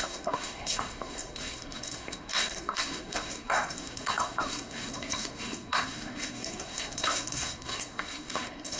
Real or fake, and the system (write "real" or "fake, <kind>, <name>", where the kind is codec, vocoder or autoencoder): fake, codec, SNAC